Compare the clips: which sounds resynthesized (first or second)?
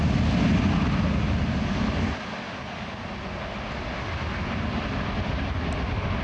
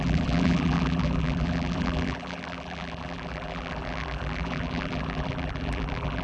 second